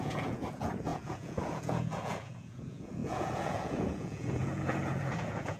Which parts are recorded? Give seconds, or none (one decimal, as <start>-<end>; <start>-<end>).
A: none